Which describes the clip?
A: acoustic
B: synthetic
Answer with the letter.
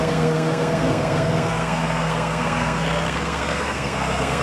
B